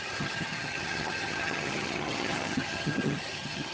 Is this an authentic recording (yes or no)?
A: no